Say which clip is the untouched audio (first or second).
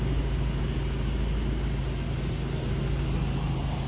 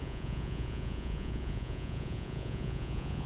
first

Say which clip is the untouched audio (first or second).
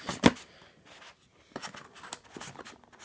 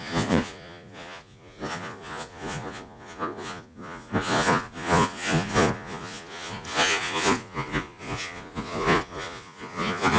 first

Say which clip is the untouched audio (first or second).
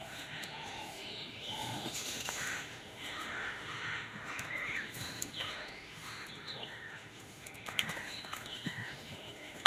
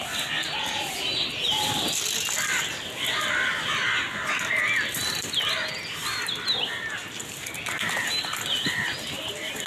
second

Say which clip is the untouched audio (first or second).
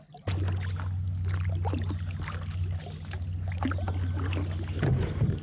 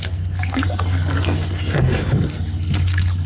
first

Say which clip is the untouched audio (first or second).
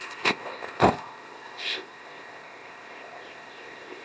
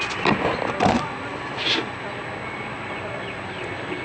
second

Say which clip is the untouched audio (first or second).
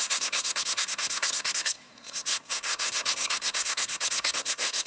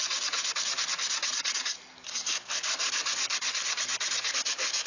second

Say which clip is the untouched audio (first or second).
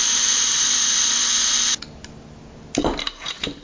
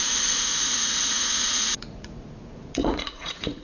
first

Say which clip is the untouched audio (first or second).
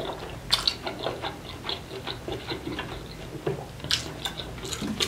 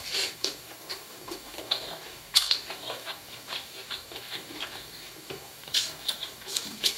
first